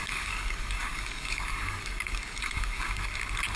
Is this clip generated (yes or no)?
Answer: yes